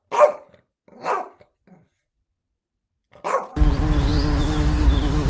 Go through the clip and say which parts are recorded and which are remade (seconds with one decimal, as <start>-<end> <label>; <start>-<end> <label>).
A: 0.0-5.3 recorded